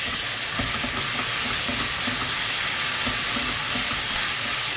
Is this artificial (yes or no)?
no